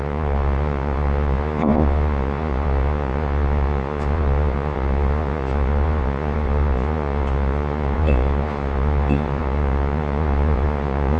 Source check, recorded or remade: remade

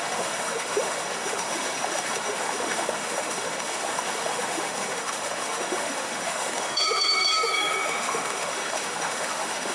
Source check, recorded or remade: remade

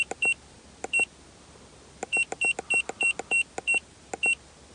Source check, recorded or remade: recorded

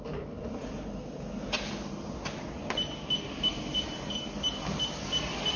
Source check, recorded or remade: recorded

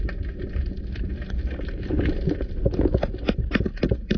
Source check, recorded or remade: recorded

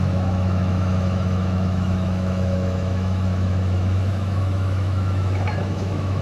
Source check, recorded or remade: remade